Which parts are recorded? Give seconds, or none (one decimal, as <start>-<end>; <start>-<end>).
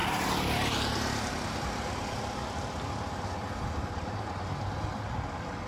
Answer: 0.0-5.7